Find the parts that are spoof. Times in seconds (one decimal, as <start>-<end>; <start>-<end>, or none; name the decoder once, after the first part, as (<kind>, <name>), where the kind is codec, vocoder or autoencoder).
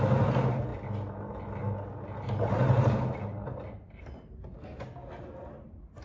none